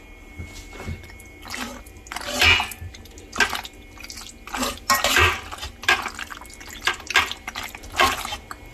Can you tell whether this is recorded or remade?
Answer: recorded